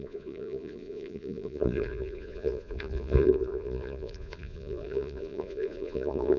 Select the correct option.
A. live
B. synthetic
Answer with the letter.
B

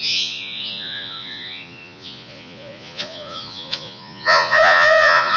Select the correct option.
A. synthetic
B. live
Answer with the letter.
A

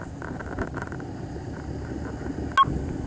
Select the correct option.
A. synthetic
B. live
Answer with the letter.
B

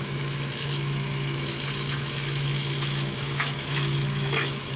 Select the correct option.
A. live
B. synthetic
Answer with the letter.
B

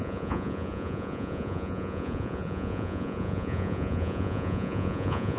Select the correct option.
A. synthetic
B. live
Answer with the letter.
A